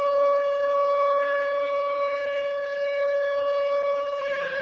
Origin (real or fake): fake